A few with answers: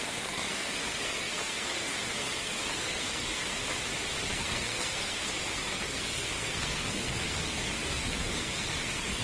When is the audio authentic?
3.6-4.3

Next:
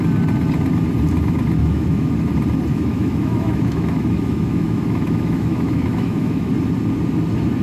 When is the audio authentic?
0.0-1.6; 2.3-2.7; 6.5-7.6

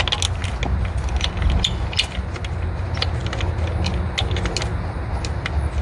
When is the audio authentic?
0.0-5.8

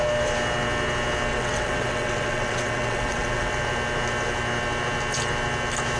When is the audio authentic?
0.0-1.3; 3.5-6.0

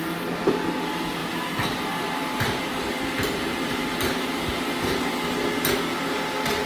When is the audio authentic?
0.0-3.5; 4.0-6.7

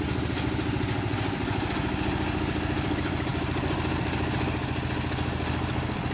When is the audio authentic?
0.0-6.1

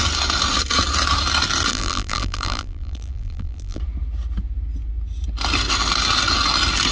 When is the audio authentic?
0.0-1.7; 3.8-6.9

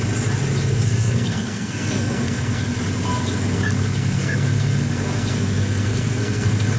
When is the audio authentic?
0.0-0.7; 2.7-3.1